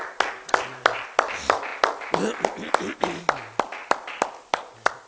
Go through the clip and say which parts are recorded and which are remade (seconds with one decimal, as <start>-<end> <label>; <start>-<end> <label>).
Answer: 0.0-5.1 recorded